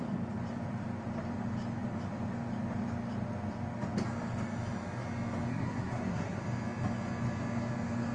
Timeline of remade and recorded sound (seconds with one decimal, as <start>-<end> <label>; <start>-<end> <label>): 0.0-5.5 recorded; 5.5-6.4 remade; 6.4-8.1 recorded